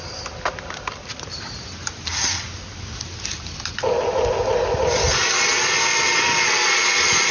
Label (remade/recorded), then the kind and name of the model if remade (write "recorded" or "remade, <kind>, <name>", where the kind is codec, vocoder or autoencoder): recorded